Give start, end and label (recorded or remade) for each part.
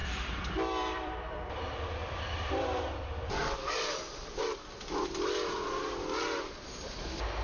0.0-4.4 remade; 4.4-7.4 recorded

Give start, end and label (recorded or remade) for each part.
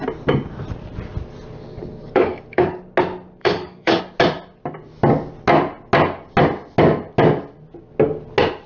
0.0-2.0 recorded; 2.0-2.8 remade; 2.8-3.4 recorded; 3.4-4.0 remade; 4.0-8.7 recorded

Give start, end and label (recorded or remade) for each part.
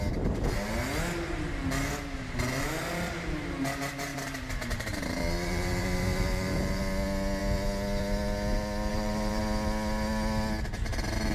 0.0-4.1 recorded; 4.1-6.8 remade; 6.8-8.9 recorded; 8.9-9.4 remade; 9.4-11.3 recorded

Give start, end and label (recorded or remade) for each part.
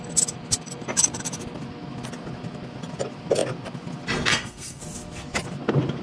0.0-4.3 recorded; 4.3-4.8 remade; 4.8-6.0 recorded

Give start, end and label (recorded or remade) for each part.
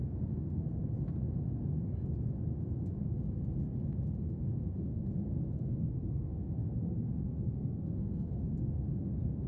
0.0-0.8 remade; 0.8-4.1 recorded; 4.1-9.5 remade